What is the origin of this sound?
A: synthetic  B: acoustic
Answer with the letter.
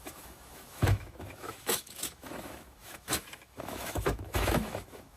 A